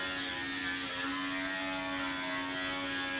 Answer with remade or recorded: recorded